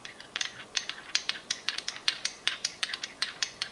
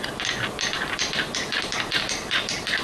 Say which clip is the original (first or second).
second